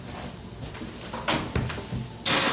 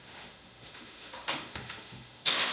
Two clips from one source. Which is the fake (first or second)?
second